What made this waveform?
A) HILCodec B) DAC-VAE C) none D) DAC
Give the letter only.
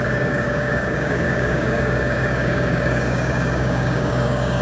D